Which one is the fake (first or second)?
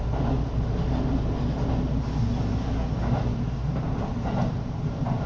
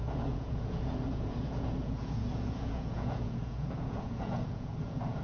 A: second